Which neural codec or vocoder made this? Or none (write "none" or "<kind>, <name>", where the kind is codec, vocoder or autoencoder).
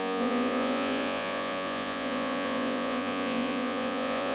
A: vocoder, Vocos